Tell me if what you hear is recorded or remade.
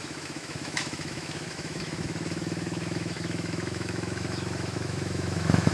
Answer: remade